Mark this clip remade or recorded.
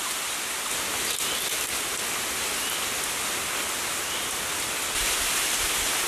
recorded